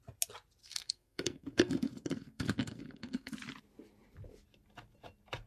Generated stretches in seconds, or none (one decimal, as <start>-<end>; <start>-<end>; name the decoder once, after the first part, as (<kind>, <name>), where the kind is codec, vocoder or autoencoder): 0.6-3.3 (codec, SNAC)